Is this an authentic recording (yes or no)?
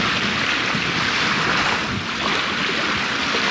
yes